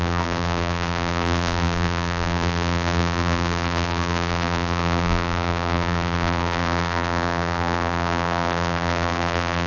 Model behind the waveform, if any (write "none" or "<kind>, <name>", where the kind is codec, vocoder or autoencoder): vocoder, BigVGAN v2